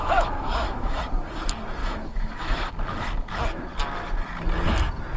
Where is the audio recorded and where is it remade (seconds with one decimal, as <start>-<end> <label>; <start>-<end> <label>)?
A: 0.0-1.0 remade; 1.0-1.8 recorded; 1.8-2.7 remade; 2.7-5.2 recorded